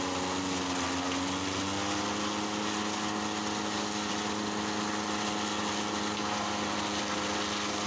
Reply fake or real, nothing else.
real